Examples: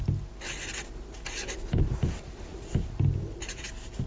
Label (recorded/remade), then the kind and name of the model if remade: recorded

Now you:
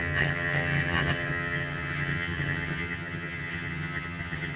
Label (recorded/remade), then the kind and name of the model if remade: remade, vocoder, HiFi-GAN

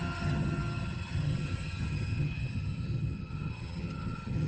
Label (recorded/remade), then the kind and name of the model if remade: remade, vocoder, HiFi-GAN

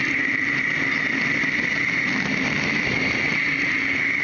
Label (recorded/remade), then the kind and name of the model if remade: recorded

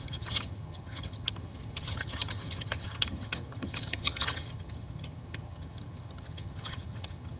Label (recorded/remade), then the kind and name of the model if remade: remade, vocoder, HiFi-GAN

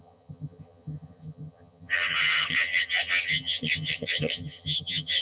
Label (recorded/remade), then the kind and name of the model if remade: remade, vocoder, HiFi-GAN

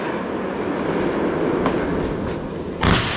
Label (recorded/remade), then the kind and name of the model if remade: recorded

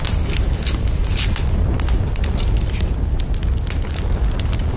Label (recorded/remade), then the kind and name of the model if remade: recorded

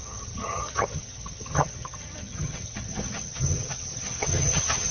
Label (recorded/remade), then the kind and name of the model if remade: remade, vocoder, HiFi-GAN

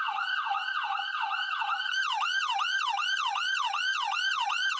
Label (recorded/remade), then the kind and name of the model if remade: remade, vocoder, HiFi-GAN